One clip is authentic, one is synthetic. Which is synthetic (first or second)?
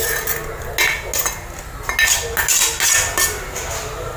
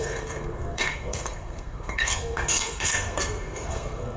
second